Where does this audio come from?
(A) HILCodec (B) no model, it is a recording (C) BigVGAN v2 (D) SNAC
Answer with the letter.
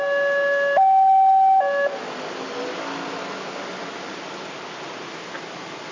B